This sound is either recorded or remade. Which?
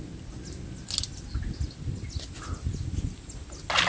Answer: recorded